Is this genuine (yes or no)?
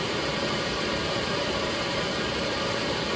no